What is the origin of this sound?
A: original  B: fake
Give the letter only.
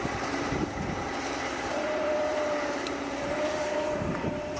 B